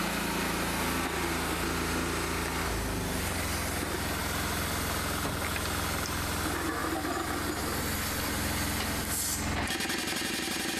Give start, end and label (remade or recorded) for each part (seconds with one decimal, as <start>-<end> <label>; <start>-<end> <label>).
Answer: 0.0-10.8 recorded